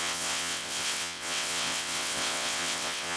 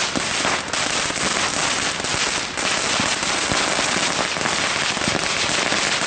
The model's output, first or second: first